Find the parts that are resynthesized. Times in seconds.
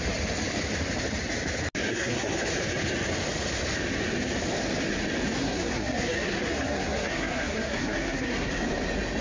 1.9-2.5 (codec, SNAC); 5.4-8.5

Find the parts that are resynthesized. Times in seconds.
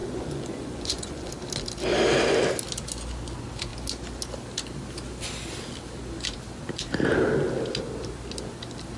0.0-1.3 (vocoder, Vocos)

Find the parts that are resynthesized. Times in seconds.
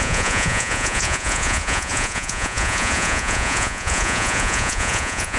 0.0-5.4 (vocoder, Vocos)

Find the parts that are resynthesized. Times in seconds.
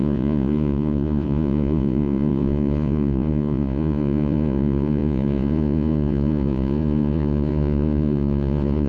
0.0-8.9 (vocoder, Vocos)